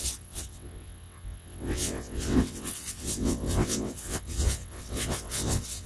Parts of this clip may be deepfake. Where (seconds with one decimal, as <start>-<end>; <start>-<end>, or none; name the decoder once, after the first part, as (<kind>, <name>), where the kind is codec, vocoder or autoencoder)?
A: 0.0-5.9 (vocoder, WaveNeXt)